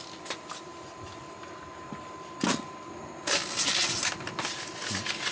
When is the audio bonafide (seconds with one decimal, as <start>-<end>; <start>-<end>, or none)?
0.0-5.3